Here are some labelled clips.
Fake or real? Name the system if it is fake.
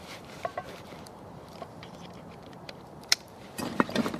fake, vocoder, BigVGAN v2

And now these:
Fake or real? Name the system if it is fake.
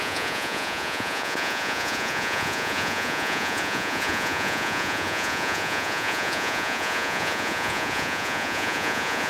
fake, vocoder, Vocos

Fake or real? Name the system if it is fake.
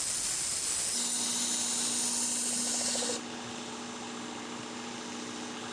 real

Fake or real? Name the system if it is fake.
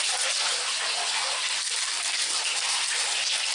real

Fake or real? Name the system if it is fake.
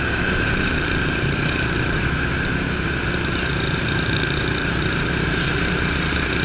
fake, vocoder, BigVGAN v2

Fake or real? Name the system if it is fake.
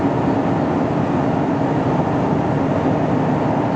real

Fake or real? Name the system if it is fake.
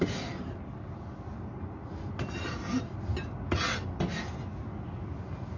real